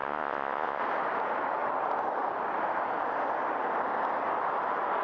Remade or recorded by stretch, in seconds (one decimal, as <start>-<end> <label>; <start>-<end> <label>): 0.0-0.8 remade; 0.8-5.0 recorded